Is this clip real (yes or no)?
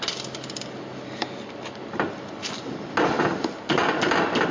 yes